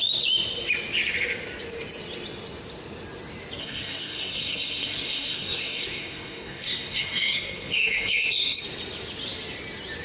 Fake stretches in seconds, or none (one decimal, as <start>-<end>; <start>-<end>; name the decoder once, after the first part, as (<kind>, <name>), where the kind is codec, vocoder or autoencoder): 3.6-8.6 (codec, SNAC)